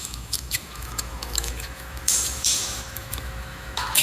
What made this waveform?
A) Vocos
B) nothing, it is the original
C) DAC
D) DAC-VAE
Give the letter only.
D